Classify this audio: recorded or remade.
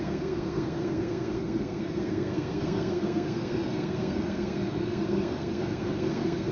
remade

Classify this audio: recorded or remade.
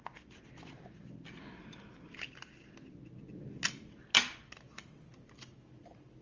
recorded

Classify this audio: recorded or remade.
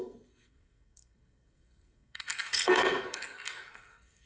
remade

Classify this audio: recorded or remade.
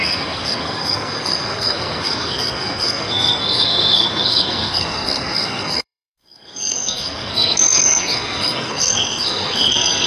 remade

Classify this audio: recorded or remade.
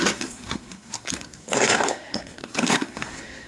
remade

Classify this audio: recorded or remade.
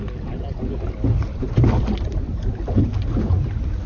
recorded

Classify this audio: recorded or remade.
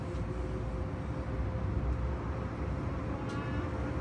recorded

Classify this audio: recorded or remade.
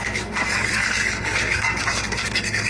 remade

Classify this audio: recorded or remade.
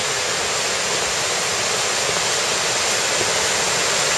recorded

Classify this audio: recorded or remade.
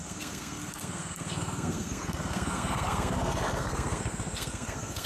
remade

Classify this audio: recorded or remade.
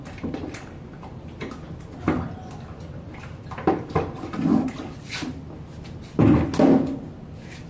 recorded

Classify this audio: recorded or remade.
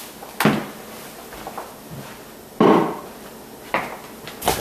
recorded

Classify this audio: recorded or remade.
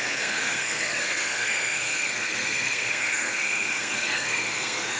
remade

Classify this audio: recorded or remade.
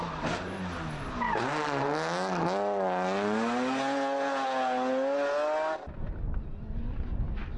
recorded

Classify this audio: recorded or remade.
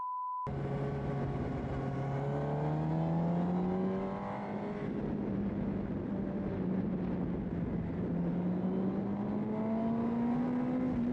recorded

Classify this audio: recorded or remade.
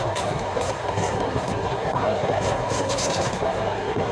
remade